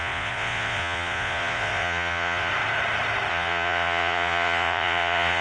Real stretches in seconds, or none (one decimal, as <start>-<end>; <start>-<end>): 2.5-3.3